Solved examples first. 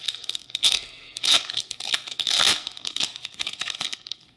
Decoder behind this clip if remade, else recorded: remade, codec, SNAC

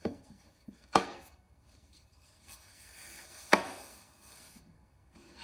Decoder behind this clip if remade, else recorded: remade, codec, SNAC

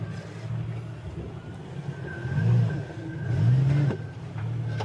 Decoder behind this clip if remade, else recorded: recorded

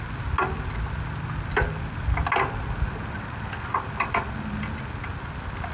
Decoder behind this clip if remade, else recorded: recorded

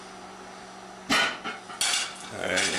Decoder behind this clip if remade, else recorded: recorded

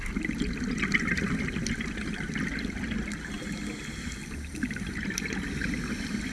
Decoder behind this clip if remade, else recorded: recorded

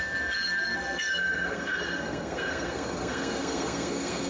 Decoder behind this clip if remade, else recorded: remade, codec, SNAC